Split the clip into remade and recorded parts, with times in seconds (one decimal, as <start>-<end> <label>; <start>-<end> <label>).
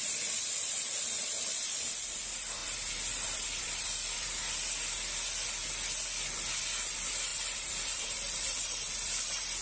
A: 0.0-4.4 remade; 4.4-6.2 recorded; 6.2-9.6 remade